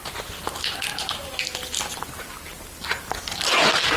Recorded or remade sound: recorded